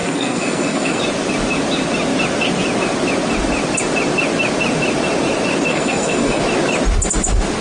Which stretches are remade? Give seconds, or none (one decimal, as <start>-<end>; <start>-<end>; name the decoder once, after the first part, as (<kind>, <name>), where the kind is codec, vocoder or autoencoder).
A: 0.0-1.0 (codec, SNAC); 5.7-6.4